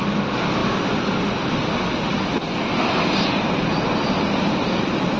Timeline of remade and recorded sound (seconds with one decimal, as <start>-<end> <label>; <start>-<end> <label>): 0.0-5.2 recorded